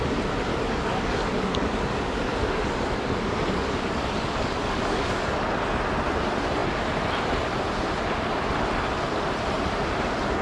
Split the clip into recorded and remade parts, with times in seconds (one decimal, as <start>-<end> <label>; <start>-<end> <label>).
0.0-0.5 recorded; 0.5-5.1 remade; 5.1-10.4 recorded